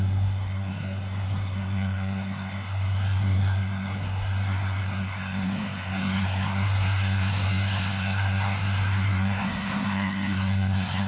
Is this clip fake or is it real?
fake